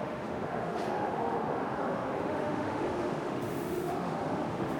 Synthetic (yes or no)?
yes